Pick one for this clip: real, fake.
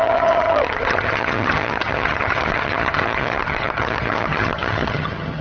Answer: fake